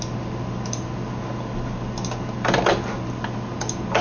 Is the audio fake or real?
real